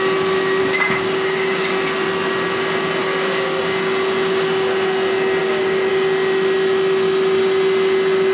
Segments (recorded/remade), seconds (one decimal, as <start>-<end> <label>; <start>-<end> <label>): 0.0-0.6 recorded; 0.6-1.7 remade; 1.7-3.0 recorded; 3.0-3.6 remade; 3.6-5.4 recorded; 5.4-5.9 remade; 5.9-8.3 recorded